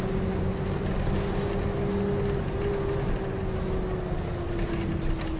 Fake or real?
real